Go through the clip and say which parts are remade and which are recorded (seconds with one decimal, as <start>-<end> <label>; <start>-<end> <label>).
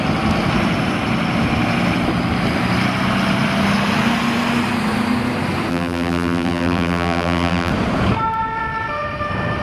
0.0-5.7 recorded; 5.7-7.7 remade; 7.7-9.6 recorded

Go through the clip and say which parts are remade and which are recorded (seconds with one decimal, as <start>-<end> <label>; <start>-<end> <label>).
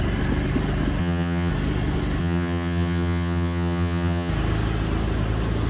0.0-1.0 recorded; 1.0-1.5 remade; 1.5-2.2 recorded; 2.2-4.3 remade; 4.3-5.7 recorded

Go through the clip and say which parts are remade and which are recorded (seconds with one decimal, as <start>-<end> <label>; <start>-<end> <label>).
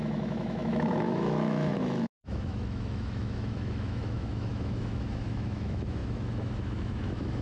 0.0-7.4 remade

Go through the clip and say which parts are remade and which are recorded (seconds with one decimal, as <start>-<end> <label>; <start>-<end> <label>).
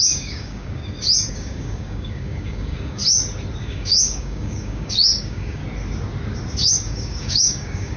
0.0-0.8 remade; 0.8-1.3 recorded; 1.3-3.0 remade; 3.0-3.6 recorded; 3.6-5.6 remade; 5.6-6.7 recorded; 6.7-8.0 remade